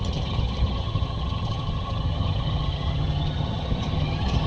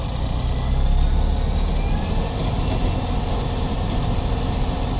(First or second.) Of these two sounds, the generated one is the first